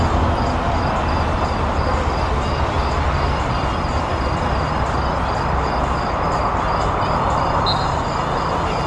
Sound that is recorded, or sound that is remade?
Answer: recorded